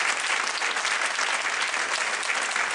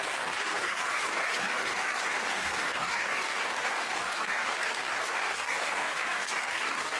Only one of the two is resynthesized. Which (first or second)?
second